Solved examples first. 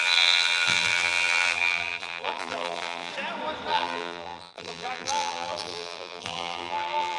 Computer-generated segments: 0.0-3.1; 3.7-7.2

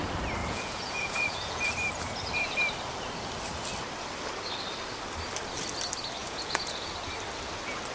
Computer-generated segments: 0.4-1.7; 6.2-6.9

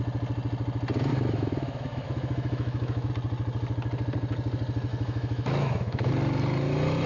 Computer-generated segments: 1.1-3.1; 4.9-6.1

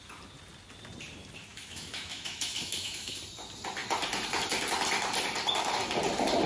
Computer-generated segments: 1.5-3.2

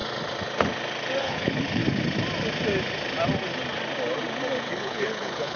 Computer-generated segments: 1.2-1.8; 4.7-5.6